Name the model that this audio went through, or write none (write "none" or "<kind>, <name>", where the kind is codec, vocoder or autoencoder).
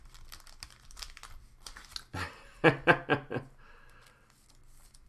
none